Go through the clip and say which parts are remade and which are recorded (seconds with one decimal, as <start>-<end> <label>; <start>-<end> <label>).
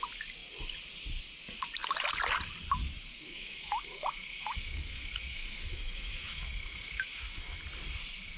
0.0-3.1 recorded; 3.1-7.6 remade; 7.6-8.4 recorded